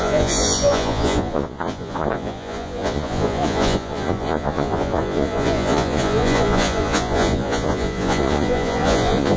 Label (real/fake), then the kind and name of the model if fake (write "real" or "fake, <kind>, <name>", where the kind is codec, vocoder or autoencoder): fake, vocoder, Vocos